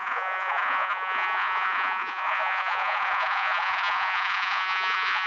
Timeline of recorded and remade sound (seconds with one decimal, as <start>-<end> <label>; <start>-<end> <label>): 0.0-5.3 remade